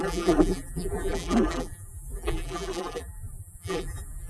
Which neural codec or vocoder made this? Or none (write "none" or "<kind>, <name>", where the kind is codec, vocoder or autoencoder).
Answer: vocoder, BigVGAN v2